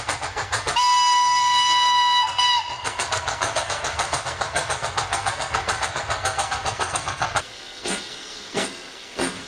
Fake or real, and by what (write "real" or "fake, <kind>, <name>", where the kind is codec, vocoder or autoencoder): fake, codec, SNAC